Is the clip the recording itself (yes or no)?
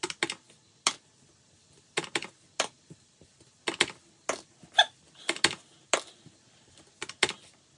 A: yes